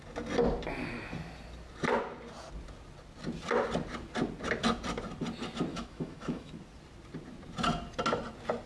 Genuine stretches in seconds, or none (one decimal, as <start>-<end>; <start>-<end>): 0.0-5.7; 6.5-8.7